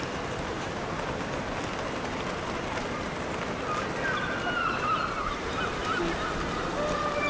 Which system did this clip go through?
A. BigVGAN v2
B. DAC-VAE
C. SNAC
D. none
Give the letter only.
D